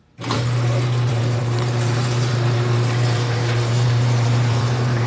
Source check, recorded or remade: remade